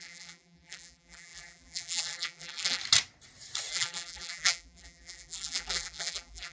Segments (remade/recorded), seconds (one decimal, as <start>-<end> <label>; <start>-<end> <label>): 0.0-2.8 remade; 2.8-3.7 recorded; 3.7-6.5 remade